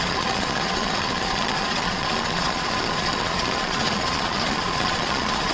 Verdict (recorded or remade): remade